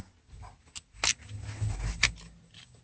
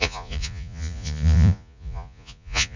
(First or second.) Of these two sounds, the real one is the first